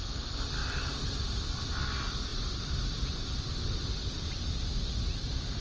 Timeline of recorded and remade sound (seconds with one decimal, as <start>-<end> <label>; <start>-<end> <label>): 0.0-0.6 recorded; 0.6-1.2 remade; 1.2-2.3 recorded; 2.3-5.6 remade